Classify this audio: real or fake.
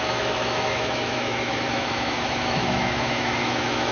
fake